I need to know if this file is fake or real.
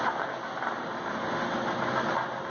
real